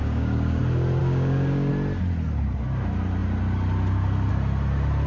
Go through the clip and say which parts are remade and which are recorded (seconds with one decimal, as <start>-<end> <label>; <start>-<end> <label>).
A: 0.0-0.6 remade; 0.6-1.0 recorded; 1.0-1.7 remade; 1.7-5.1 recorded